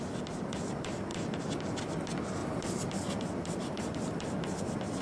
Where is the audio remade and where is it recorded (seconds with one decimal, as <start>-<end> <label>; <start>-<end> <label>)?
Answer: 0.0-5.0 recorded